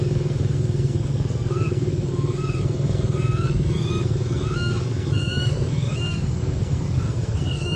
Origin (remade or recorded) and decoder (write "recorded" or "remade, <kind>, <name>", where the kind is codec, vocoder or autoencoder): remade, codec, SNAC